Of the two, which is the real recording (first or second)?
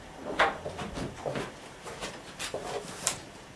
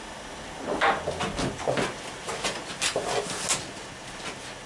second